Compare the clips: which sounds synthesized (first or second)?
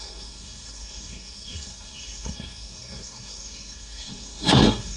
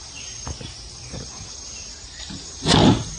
first